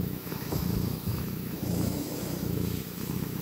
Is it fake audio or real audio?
fake